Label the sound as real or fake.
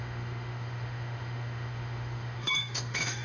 fake